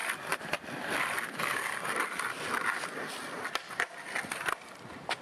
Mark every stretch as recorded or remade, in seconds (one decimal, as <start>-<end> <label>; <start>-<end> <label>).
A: 0.0-5.2 recorded